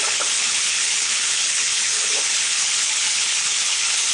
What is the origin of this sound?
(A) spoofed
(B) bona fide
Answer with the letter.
A